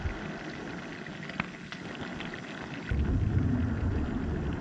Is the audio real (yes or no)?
yes